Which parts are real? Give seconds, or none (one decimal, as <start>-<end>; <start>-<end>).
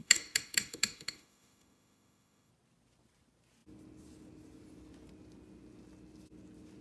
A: 2.5-6.8